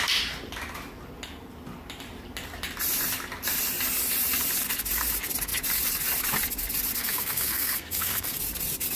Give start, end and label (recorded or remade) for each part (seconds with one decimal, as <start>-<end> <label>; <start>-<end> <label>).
0.0-7.0 recorded; 7.0-8.4 remade; 8.4-9.0 recorded